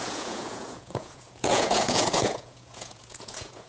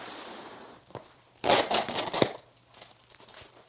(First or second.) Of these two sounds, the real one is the second